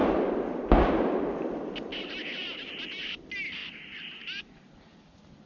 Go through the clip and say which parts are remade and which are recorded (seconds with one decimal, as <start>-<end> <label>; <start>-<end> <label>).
0.0-5.5 recorded